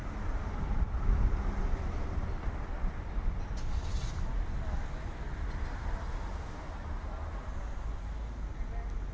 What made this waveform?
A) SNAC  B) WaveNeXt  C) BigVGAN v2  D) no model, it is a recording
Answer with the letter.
D